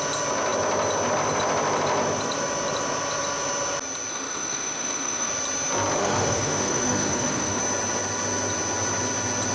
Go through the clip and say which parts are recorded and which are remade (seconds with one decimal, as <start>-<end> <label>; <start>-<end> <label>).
0.0-4.1 recorded; 4.1-5.3 remade; 5.3-6.0 recorded; 6.0-7.6 remade; 7.6-9.5 recorded